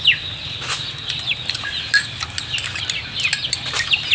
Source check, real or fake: real